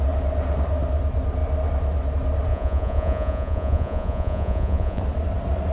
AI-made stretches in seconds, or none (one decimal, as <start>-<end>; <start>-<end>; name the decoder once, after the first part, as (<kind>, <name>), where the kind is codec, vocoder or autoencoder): 2.5-5.0 (vocoder, Vocos)